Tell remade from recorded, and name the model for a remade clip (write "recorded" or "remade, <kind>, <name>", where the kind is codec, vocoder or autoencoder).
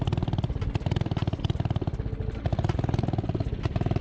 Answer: recorded